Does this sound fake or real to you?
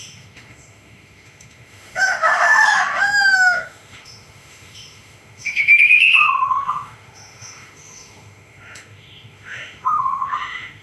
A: fake